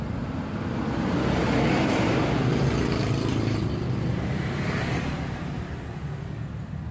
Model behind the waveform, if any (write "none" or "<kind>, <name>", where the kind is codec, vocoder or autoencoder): none